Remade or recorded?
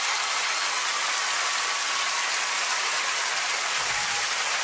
recorded